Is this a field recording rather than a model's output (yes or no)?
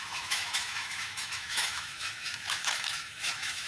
no